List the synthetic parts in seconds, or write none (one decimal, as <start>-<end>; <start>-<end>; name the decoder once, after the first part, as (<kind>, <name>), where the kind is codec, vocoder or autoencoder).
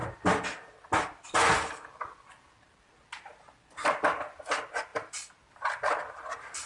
none